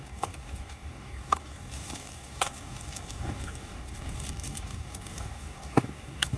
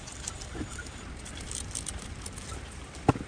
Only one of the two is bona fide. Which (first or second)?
second